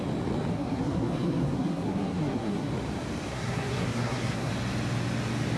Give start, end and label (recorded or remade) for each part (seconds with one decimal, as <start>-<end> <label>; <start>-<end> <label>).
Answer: 0.0-0.5 recorded; 0.5-2.7 remade; 2.7-3.3 recorded; 3.3-4.5 remade; 4.5-5.6 recorded